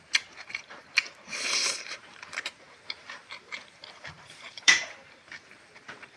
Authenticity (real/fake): fake